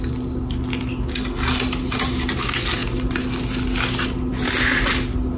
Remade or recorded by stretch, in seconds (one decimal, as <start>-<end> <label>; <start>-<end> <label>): 0.0-5.4 recorded